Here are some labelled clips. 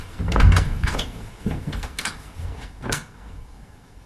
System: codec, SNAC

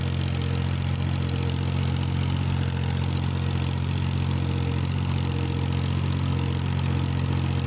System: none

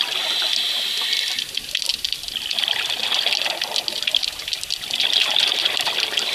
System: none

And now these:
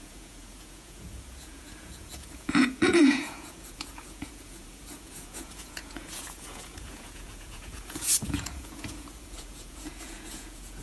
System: vocoder, Vocos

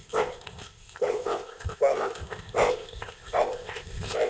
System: codec, ZipCodec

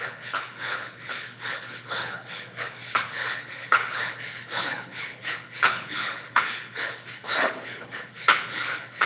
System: codec, HILCodec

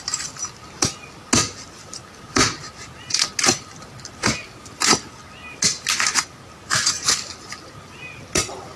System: none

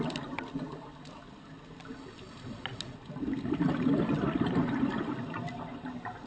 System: none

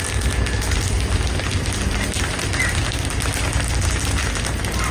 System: none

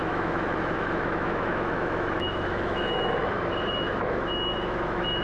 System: autoencoder, DAC-VAE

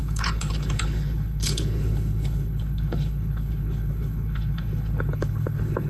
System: codec, HILCodec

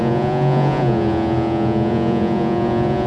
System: vocoder, Vocos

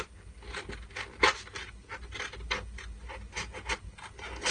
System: none